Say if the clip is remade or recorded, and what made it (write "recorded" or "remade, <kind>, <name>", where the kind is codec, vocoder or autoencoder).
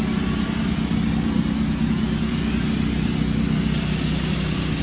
recorded